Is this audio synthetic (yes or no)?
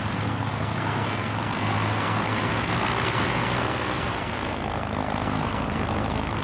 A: yes